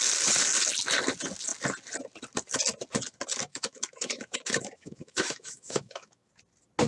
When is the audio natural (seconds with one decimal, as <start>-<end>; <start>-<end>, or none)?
0.0-3.5; 6.3-6.9